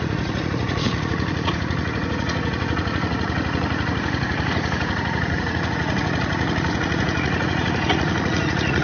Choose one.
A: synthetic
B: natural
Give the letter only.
A